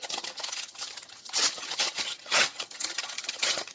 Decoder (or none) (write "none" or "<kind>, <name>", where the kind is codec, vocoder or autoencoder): vocoder, HiFi-GAN